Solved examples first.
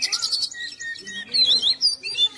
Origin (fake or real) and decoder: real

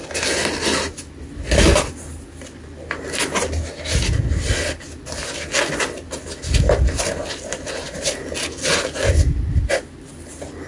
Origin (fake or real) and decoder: real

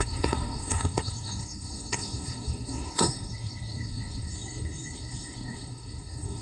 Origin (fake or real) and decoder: fake, codec, SNAC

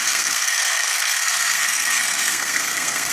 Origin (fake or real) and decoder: fake, codec, SNAC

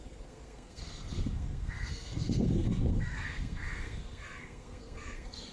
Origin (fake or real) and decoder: fake, codec, SNAC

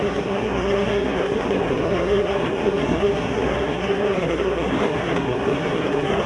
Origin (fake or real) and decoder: fake, codec, SNAC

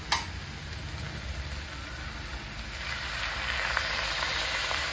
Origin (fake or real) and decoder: real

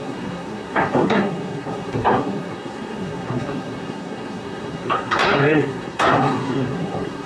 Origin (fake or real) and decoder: fake, codec, SNAC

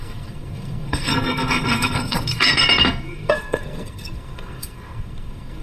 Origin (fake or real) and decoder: fake, codec, SNAC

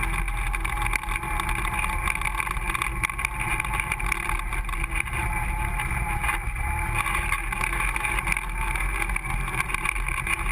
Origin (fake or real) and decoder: real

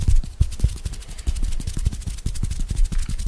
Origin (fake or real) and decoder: real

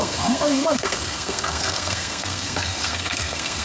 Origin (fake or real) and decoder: fake, codec, SNAC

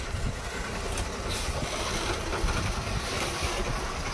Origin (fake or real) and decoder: real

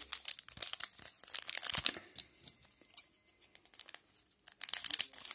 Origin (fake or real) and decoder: real